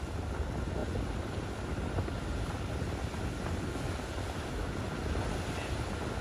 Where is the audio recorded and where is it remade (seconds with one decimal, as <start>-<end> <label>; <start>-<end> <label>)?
0.0-6.2 recorded